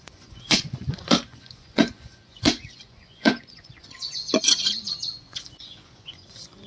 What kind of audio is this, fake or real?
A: fake